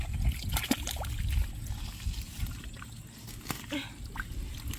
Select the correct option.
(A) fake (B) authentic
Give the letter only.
B